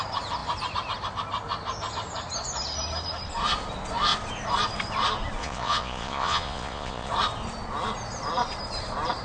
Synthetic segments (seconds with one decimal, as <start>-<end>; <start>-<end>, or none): 5.4-7.1